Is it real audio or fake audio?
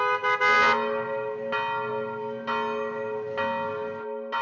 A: real